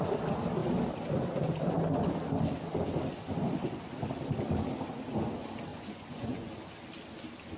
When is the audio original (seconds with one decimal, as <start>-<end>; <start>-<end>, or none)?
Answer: 0.0-5.7; 6.5-7.6